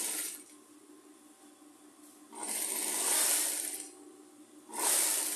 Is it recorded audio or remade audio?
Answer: recorded